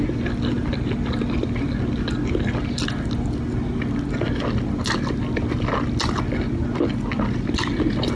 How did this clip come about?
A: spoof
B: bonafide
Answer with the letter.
B